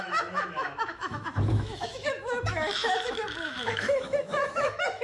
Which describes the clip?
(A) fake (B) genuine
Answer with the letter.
A